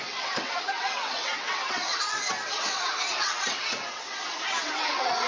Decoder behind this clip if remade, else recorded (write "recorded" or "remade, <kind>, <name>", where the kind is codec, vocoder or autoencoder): remade, vocoder, WaveNeXt